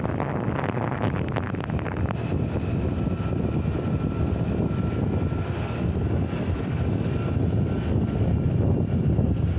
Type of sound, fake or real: real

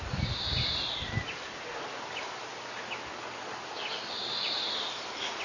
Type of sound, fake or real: real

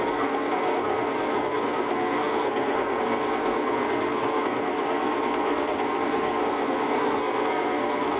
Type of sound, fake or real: fake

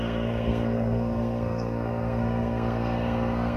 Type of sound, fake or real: fake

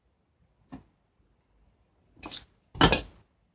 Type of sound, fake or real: real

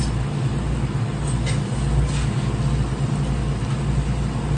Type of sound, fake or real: real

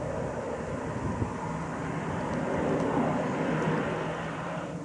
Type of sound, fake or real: real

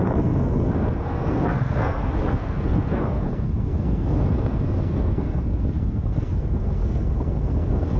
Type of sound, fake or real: fake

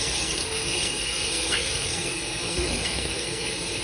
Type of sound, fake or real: fake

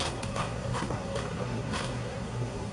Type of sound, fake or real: fake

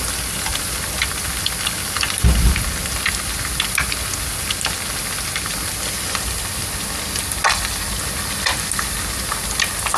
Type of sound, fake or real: real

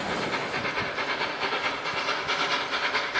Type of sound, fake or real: real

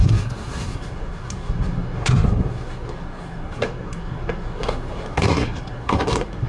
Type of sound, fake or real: fake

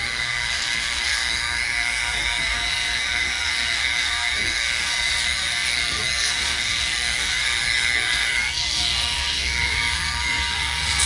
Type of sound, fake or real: fake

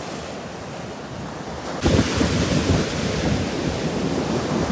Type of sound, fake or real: real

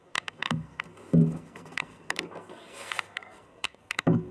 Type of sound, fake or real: fake